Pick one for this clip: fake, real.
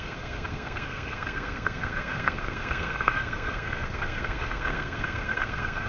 fake